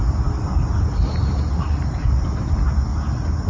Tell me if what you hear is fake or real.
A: real